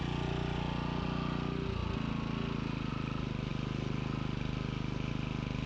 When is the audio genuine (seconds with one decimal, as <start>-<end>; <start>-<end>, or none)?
0.0-5.7